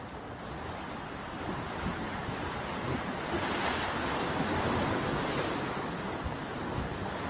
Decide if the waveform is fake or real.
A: real